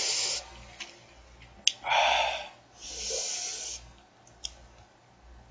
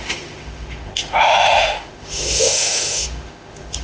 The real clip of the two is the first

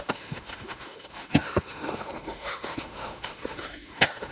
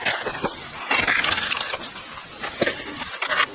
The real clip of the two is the second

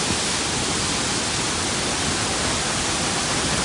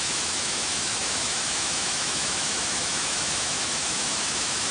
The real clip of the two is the first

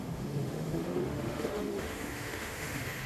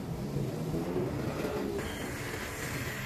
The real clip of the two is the second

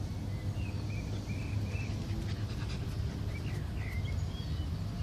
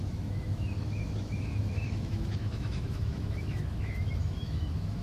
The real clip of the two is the first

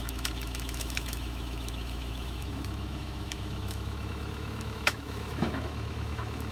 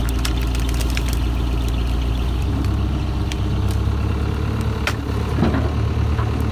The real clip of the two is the second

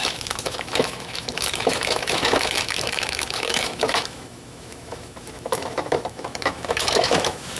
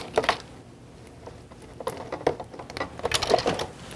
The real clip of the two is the second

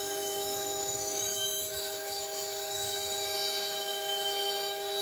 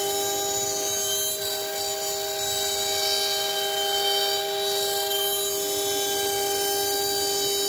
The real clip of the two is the second